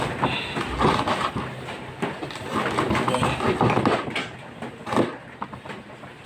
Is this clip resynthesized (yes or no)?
no